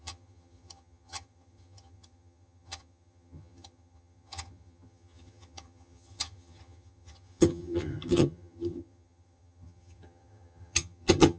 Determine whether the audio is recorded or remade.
remade